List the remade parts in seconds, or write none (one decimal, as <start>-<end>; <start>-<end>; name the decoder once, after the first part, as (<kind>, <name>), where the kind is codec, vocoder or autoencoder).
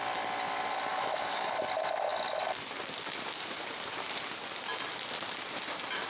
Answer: 0.9-1.5 (autoencoder, DAC-VAE)